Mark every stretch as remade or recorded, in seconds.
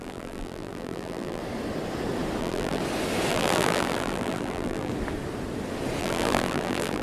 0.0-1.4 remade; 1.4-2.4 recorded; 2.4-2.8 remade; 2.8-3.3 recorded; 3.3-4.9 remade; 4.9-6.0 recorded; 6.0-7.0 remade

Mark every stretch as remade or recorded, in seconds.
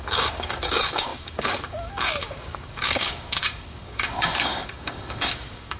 0.0-5.8 remade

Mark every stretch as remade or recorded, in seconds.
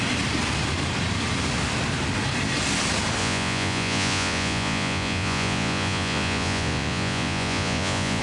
0.0-3.2 recorded; 3.2-8.2 remade